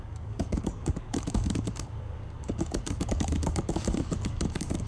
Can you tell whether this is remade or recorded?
remade